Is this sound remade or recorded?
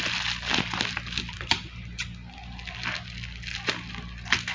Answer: recorded